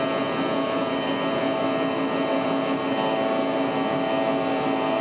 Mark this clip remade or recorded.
recorded